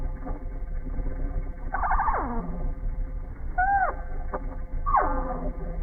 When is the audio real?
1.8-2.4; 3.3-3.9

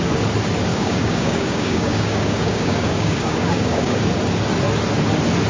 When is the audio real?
0.0-0.7; 4.0-5.5

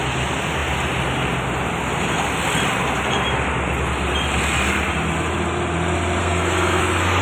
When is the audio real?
0.0-6.2; 6.8-7.2

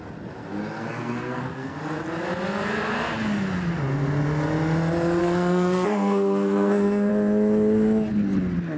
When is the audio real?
0.0-0.4; 1.8-5.2; 7.1-8.8

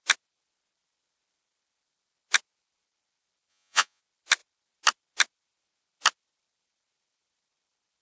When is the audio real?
0.0-3.5; 4.0-8.0